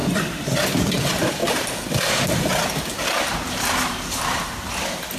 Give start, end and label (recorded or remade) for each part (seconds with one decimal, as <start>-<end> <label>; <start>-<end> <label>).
0.0-0.8 remade; 0.8-1.4 recorded; 1.4-4.5 remade; 4.5-5.2 recorded